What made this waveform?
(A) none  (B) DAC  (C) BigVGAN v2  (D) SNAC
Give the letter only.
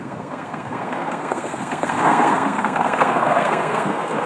D